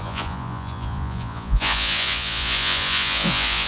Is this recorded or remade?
remade